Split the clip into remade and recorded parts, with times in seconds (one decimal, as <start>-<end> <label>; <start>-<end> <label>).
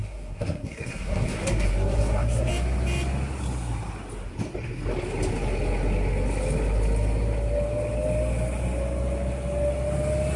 0.0-2.5 remade; 2.5-10.4 recorded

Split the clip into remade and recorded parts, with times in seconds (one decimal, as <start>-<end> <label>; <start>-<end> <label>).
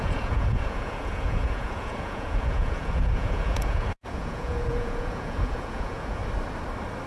0.0-6.2 remade; 6.2-7.1 recorded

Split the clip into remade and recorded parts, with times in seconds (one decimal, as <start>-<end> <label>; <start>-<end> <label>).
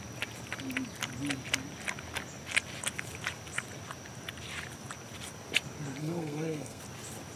0.0-6.0 recorded; 6.0-6.8 remade; 6.8-7.4 recorded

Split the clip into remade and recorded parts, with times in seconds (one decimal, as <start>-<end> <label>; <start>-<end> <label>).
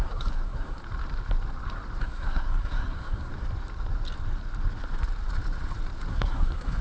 0.0-0.8 remade; 0.8-2.0 recorded; 2.0-3.3 remade; 3.3-6.1 recorded; 6.1-6.8 remade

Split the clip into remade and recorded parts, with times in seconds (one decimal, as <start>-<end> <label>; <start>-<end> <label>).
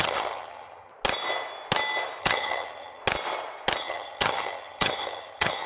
0.0-0.9 remade; 0.9-2.2 recorded; 2.2-3.0 remade; 3.0-3.8 recorded; 3.8-5.7 remade